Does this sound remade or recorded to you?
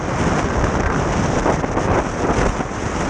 recorded